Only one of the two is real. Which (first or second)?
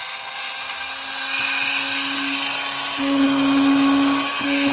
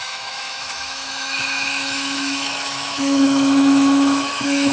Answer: first